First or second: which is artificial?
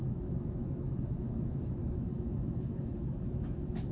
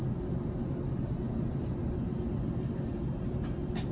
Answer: first